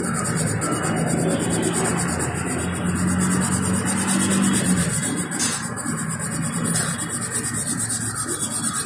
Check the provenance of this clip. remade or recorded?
recorded